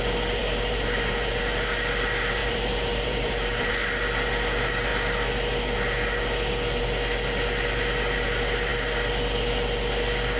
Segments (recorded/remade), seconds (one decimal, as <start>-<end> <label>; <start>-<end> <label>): 0.0-0.4 recorded; 0.4-1.4 remade; 1.4-2.4 recorded; 2.4-3.7 remade; 3.7-10.4 recorded